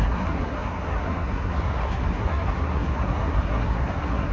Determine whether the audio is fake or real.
fake